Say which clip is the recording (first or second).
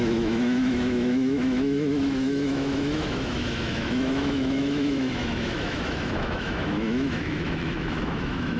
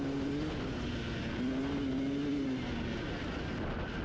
second